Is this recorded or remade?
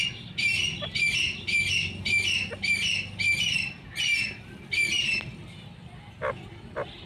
recorded